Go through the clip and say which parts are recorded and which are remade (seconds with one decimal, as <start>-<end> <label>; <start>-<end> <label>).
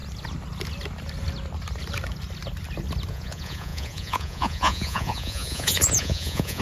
0.0-3.1 recorded; 3.1-6.6 remade